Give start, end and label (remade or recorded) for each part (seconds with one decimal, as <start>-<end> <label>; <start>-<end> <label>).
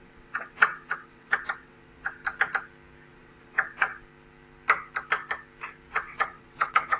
0.0-2.2 remade; 2.2-3.1 recorded; 3.1-3.9 remade; 3.9-5.9 recorded; 5.9-7.0 remade